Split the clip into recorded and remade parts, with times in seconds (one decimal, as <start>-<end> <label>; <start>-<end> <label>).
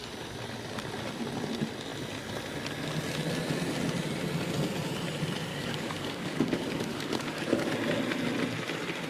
0.0-5.5 recorded; 5.5-7.7 remade; 7.7-9.1 recorded